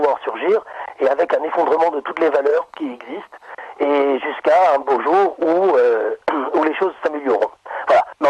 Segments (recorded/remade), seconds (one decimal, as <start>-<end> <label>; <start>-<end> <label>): 0.0-2.5 recorded; 2.5-3.5 remade; 3.5-8.3 recorded